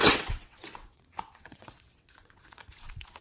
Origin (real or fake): fake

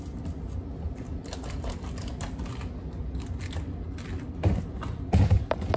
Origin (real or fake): real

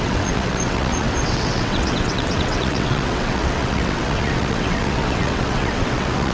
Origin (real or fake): fake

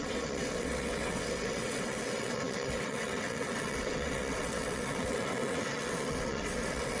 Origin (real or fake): fake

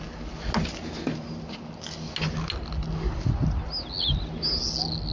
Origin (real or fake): real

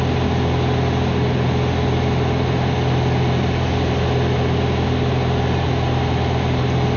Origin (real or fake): real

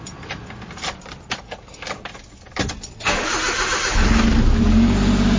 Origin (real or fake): real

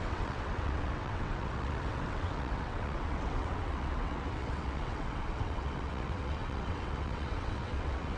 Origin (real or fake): fake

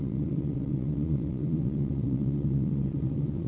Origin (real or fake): fake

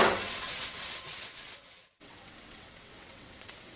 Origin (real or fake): fake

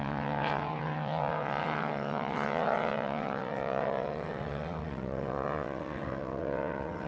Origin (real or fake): fake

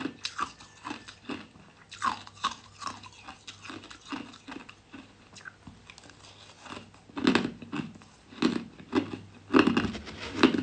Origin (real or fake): real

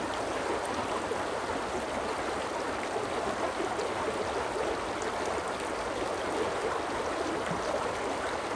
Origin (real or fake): real